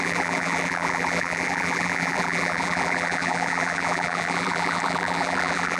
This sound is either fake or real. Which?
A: fake